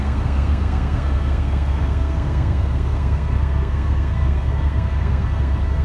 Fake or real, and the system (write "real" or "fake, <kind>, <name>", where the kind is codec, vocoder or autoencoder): fake, codec, SNAC